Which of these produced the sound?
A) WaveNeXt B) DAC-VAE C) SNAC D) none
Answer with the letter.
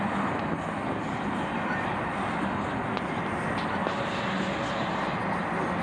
D